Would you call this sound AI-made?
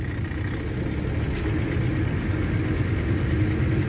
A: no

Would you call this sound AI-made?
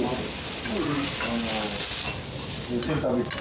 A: no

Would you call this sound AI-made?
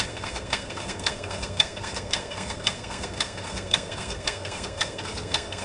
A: yes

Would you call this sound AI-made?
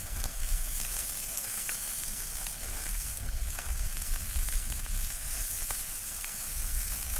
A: yes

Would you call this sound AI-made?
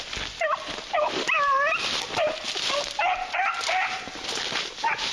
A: no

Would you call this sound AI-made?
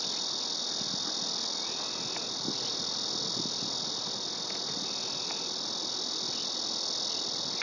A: no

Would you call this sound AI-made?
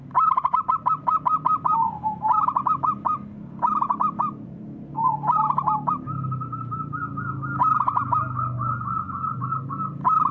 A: no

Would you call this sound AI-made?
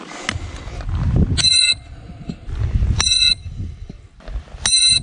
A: no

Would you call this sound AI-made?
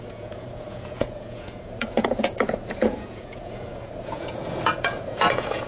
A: yes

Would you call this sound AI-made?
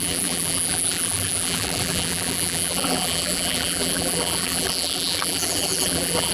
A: yes